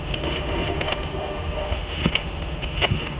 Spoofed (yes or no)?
yes